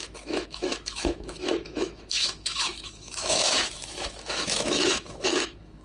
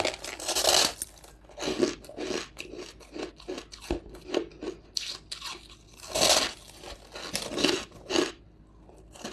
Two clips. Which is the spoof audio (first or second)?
first